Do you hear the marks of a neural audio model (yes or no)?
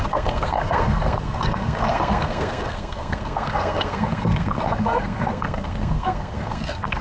yes